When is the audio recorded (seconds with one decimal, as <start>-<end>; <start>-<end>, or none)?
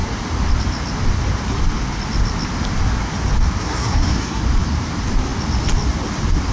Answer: 0.0-3.6; 4.4-6.5